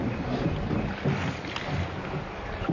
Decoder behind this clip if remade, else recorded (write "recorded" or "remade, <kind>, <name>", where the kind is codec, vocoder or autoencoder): recorded